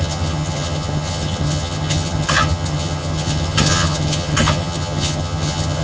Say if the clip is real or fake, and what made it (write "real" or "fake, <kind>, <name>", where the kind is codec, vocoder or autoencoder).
fake, vocoder, HiFi-GAN